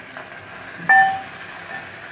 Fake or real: real